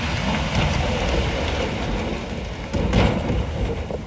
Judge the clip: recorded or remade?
recorded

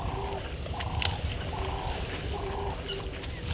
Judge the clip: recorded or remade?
recorded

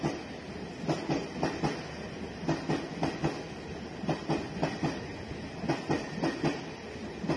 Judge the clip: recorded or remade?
recorded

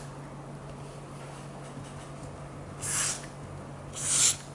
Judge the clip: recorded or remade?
recorded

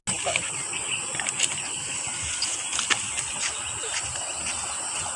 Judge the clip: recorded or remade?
recorded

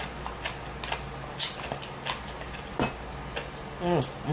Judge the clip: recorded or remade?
recorded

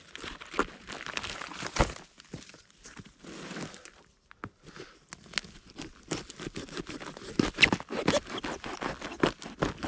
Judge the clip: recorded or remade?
recorded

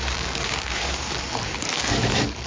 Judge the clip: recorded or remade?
remade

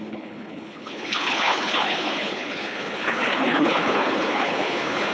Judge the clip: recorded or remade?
remade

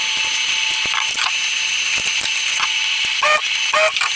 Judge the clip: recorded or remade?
recorded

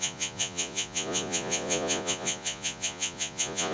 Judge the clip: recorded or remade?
remade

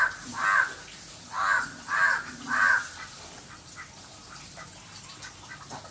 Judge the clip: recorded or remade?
recorded